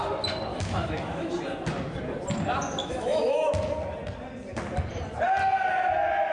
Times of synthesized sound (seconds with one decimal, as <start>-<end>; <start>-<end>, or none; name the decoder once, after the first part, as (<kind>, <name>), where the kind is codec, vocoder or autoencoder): 0.5-1.3 (autoencoder, DAC-VAE); 2.8-3.5